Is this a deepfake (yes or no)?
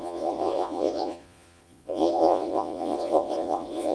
yes